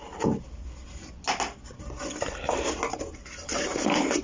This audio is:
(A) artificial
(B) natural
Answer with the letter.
B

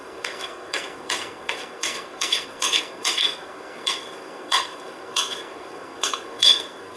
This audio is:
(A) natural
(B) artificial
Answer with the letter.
B